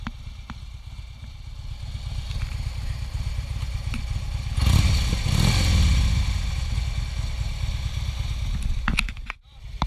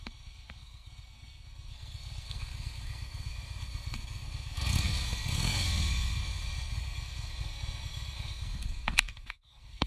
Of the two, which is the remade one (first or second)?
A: second